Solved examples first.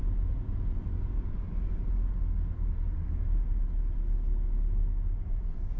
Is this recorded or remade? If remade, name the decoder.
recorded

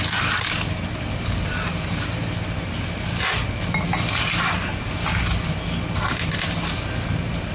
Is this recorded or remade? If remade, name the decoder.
recorded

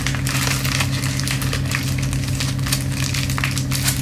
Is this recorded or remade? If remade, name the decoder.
recorded